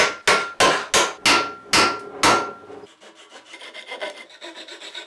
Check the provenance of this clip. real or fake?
real